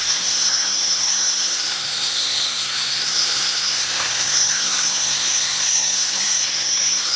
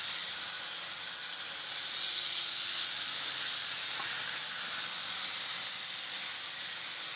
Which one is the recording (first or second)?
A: second